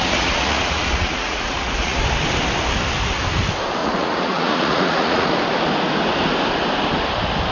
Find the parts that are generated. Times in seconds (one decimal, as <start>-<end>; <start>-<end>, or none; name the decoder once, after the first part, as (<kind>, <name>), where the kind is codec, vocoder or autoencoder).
0.0-2.0 (vocoder, Vocos); 3.8-5.3